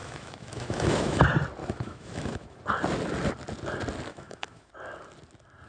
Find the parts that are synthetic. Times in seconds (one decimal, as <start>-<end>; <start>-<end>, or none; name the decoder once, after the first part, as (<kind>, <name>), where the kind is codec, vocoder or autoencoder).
0.0-1.2 (autoencoder, DAC-VAE); 1.6-2.6; 4.1-4.7

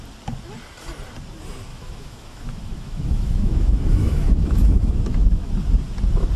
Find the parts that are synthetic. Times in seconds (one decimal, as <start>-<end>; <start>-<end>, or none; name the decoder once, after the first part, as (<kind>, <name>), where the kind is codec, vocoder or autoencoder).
1.7-5.5 (autoencoder, DAC-VAE)

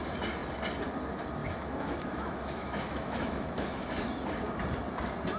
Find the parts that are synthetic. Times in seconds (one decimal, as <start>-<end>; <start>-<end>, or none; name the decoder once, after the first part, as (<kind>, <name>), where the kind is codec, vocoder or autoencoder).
1.4-4.1 (autoencoder, DAC-VAE)

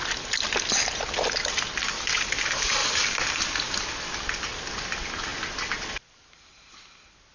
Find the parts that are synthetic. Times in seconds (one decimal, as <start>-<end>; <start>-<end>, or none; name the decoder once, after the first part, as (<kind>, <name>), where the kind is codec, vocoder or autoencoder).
5.3-5.9 (vocoder, BigVGAN v2)

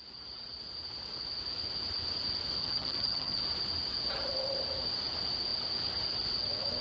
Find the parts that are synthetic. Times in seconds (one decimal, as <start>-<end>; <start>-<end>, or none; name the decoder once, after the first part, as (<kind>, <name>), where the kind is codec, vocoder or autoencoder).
2.6-3.4 (vocoder, HiFi-GAN)